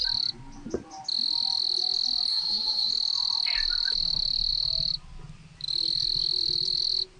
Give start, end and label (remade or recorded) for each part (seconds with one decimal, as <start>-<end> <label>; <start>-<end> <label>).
0.0-2.3 recorded; 2.3-2.9 remade; 2.9-7.2 recorded